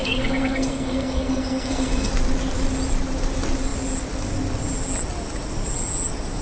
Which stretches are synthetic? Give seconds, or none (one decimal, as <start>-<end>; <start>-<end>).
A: 0.0-2.1